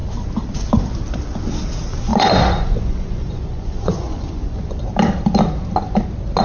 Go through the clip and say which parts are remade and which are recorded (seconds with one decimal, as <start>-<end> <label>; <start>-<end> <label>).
0.0-2.1 recorded; 2.1-4.8 remade; 4.8-6.4 recorded